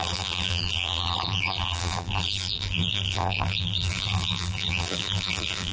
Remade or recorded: remade